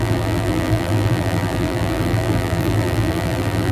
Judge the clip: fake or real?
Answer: fake